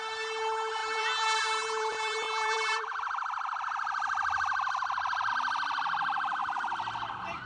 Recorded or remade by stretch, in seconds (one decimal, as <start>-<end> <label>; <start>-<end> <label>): 0.0-0.8 recorded; 0.8-5.3 remade; 5.3-6.4 recorded; 6.4-7.1 remade; 7.1-7.5 recorded